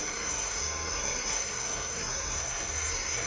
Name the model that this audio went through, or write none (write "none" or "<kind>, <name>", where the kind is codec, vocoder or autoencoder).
codec, SNAC